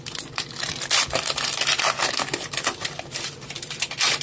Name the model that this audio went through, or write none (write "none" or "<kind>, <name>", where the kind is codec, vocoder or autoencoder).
vocoder, BigVGAN v2